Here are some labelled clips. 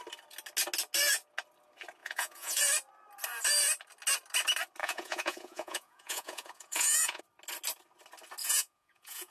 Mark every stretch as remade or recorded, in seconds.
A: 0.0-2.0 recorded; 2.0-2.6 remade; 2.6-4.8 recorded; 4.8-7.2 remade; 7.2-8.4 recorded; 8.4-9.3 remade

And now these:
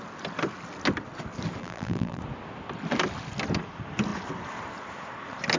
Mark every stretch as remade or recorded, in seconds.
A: 0.0-1.6 recorded; 1.6-2.2 remade; 2.2-5.6 recorded

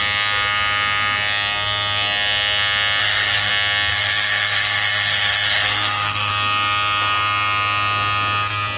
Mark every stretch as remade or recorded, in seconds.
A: 0.0-3.0 recorded; 3.0-3.5 remade; 3.5-3.9 recorded; 3.9-6.3 remade; 6.3-8.8 recorded

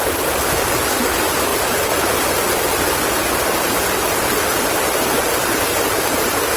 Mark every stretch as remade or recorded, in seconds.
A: 0.0-1.5 recorded; 1.5-5.5 remade; 5.5-6.6 recorded

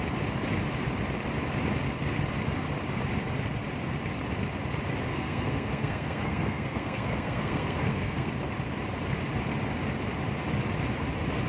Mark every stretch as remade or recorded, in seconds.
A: 0.0-5.1 recorded; 5.1-8.3 remade; 8.3-11.5 recorded

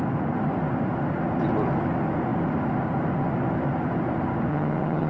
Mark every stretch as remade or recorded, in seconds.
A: 0.0-4.5 recorded; 4.5-5.1 remade

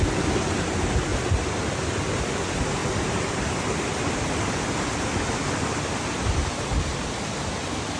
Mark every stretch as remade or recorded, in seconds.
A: 0.0-8.0 recorded

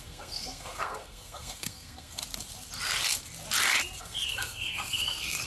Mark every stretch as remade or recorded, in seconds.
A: 0.0-2.2 remade; 2.2-4.0 recorded; 4.0-5.5 remade